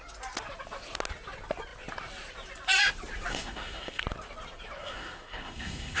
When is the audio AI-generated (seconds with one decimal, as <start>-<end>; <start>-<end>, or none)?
3.3-4.0; 4.8-6.0